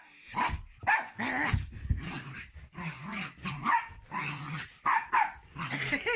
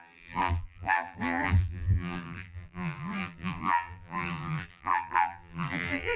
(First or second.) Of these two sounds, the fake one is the second